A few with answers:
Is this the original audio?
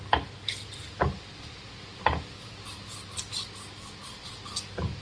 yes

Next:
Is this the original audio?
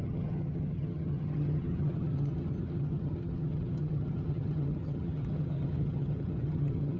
no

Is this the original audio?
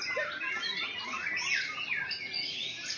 yes